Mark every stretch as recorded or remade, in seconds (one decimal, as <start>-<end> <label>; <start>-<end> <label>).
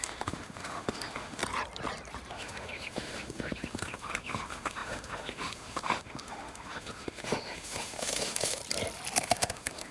0.0-1.4 remade; 1.4-2.3 recorded; 2.3-8.6 remade; 8.6-9.2 recorded; 9.2-9.9 remade